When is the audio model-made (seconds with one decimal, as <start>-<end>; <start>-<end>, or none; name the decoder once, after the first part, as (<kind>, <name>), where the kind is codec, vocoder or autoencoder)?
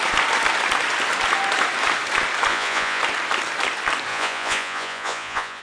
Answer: 2.5-3.0 (vocoder, Vocos); 4.1-5.6